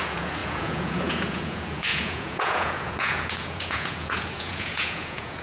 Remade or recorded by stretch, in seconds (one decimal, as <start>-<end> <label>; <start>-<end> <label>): 0.0-5.4 remade